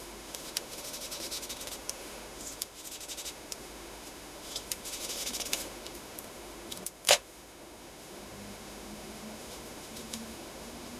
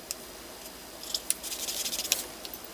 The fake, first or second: first